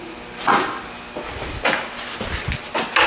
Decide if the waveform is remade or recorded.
recorded